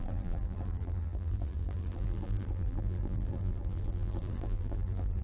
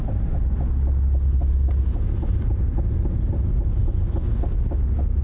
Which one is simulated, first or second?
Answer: first